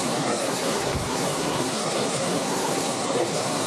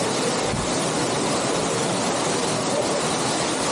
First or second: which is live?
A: second